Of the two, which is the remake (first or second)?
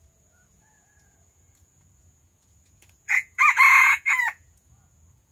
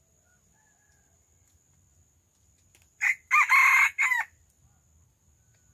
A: first